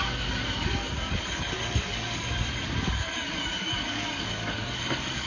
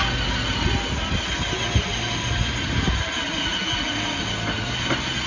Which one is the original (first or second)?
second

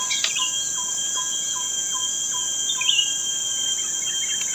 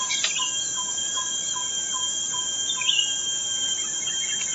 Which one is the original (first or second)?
first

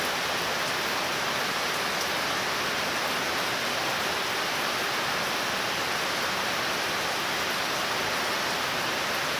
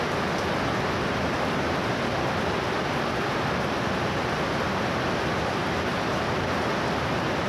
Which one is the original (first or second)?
second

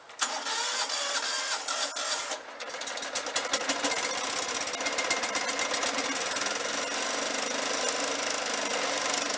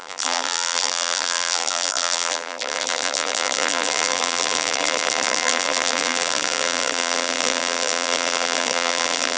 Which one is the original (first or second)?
first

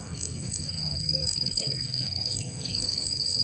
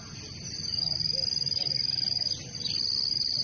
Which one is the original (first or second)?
second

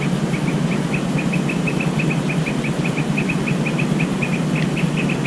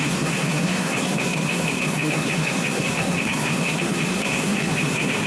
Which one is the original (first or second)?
first